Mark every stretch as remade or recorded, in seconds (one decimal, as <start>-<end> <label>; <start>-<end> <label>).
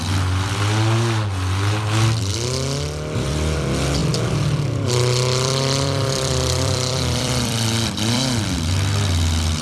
0.0-4.0 recorded; 4.0-8.4 remade; 8.4-9.6 recorded